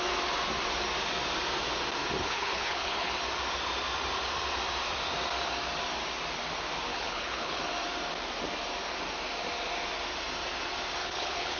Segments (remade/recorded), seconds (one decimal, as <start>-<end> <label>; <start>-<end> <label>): 0.0-2.2 recorded; 2.2-3.1 remade; 3.1-6.9 recorded; 6.9-7.6 remade; 7.6-11.0 recorded; 11.0-11.6 remade